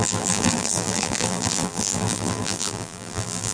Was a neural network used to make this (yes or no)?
yes